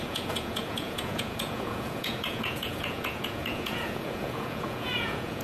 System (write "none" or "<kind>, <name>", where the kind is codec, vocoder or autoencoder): vocoder, Vocos